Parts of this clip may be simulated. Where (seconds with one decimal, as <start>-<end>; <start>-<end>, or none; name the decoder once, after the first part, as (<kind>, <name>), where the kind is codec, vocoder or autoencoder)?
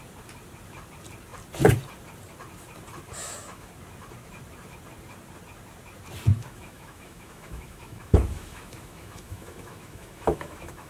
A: 3.2-3.7 (autoencoder, DAC-VAE); 6.3-10.9